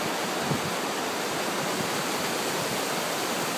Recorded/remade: recorded